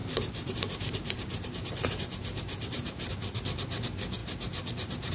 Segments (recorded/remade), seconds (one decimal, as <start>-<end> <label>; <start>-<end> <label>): 0.0-3.1 remade; 3.1-5.1 recorded